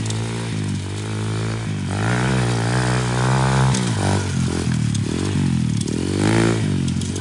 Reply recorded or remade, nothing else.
recorded